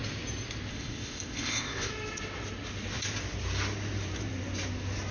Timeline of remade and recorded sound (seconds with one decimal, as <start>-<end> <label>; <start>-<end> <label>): 0.0-0.7 recorded; 0.7-1.9 remade; 1.9-5.1 recorded